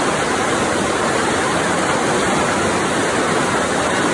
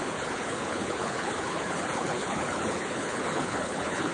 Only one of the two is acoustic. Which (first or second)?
first